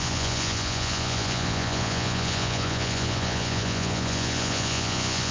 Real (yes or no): no